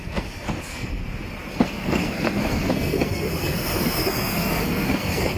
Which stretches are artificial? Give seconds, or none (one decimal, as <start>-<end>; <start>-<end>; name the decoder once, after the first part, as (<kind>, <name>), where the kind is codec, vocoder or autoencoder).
0.0-1.0 (codec, SNAC); 1.5-5.4